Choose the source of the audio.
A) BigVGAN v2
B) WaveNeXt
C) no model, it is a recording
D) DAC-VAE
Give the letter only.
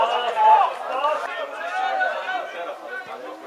C